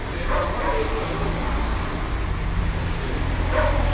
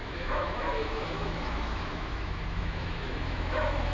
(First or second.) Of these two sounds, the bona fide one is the first